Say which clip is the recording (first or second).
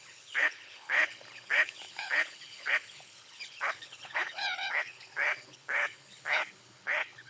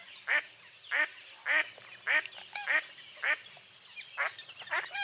second